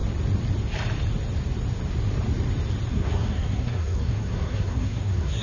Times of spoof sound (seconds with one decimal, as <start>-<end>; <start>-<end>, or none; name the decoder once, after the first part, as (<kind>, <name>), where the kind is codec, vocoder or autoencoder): 2.9-5.4 (codec, SNAC)